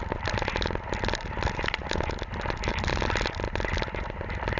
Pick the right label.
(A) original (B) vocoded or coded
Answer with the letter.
A